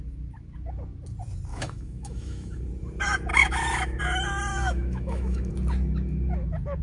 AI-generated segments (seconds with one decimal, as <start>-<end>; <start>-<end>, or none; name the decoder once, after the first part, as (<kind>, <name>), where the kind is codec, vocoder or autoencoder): 1.5-2.6 (autoencoder, DAC-VAE); 3.3-4.0; 4.5-5.5